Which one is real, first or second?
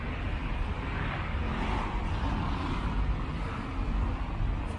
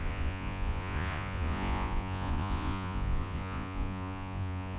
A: first